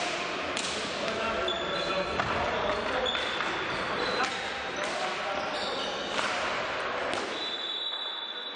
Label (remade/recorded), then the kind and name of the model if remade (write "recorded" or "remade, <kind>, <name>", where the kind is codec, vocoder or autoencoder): recorded